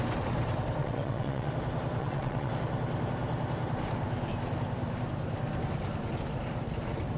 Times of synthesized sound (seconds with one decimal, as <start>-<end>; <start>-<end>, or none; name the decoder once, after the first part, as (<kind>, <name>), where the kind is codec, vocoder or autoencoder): 0.8-1.5 (vocoder, WaveNeXt); 2.0-2.5